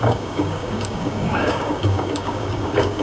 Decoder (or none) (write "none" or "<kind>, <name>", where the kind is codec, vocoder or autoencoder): codec, DAC